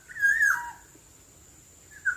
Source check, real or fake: real